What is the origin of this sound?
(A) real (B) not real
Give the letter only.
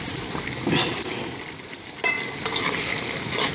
A